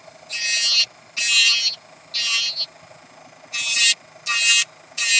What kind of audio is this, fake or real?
real